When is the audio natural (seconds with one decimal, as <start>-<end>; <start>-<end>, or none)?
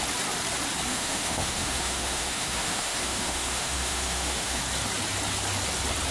0.0-0.9; 4.6-6.1